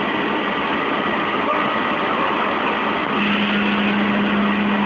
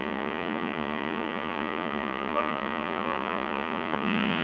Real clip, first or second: first